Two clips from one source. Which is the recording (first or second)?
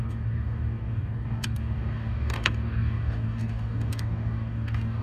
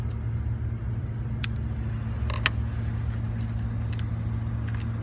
second